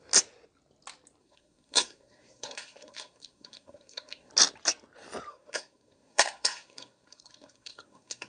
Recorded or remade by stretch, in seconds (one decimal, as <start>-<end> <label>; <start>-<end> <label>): 0.0-1.2 recorded; 1.2-4.3 remade; 4.3-5.3 recorded; 5.3-8.3 remade